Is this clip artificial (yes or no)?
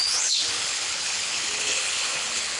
yes